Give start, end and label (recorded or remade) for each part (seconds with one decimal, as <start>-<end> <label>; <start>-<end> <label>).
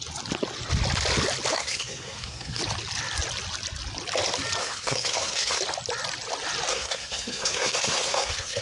0.0-1.5 recorded; 1.5-2.6 remade; 2.6-4.6 recorded; 4.6-5.6 remade; 5.6-6.7 recorded; 6.7-8.6 remade